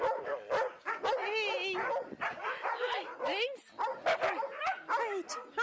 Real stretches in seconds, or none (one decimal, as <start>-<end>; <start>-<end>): 0.0-5.6